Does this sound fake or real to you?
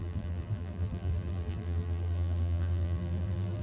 fake